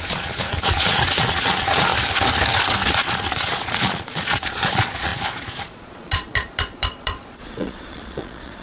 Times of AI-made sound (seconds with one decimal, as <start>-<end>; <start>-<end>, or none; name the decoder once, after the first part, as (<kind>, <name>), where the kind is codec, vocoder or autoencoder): 0.0-1.9 (vocoder, Vocos); 2.9-8.6

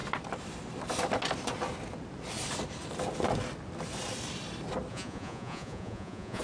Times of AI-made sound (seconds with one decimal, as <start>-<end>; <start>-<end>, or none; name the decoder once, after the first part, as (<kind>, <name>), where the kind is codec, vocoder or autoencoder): 4.9-6.4 (vocoder, Vocos)

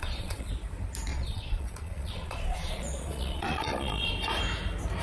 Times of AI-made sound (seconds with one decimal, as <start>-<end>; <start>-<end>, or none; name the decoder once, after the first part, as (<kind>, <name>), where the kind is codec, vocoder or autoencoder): 0.0-0.5 (vocoder, Vocos); 1.1-4.1

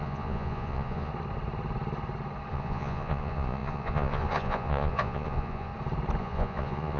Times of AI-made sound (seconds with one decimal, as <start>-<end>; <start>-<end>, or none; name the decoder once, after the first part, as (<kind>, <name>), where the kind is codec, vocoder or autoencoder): 0.0-1.1 (vocoder, Vocos); 2.5-5.7; 6.2-7.0

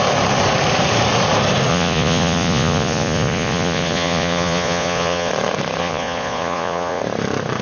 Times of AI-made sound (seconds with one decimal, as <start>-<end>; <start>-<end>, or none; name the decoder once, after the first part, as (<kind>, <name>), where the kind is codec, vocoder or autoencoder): 1.7-5.3 (vocoder, Vocos); 5.8-7.0